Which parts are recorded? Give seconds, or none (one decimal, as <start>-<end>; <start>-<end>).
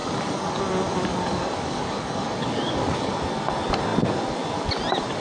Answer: 0.6-1.1; 3.1-5.2